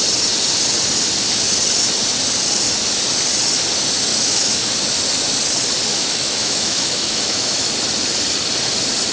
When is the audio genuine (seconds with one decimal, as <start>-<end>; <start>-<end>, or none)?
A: 0.0-4.1; 4.7-5.9; 7.7-9.1